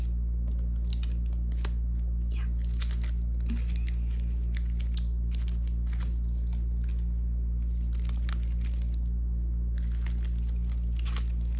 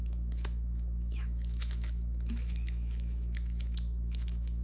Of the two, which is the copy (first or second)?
second